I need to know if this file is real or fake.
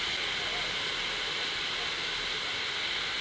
real